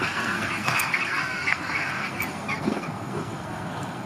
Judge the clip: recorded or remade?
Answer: remade